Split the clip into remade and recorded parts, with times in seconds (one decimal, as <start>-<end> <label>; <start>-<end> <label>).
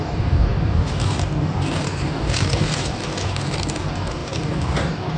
0.0-5.2 remade